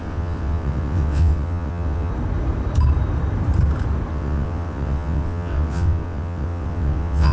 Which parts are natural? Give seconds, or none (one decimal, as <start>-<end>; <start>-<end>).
2.1-4.1